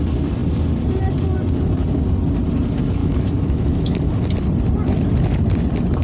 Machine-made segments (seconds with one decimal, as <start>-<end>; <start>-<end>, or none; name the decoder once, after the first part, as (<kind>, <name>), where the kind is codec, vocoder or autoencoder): 3.0-4.1 (autoencoder, DAC-VAE)